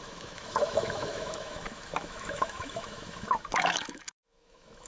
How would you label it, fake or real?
fake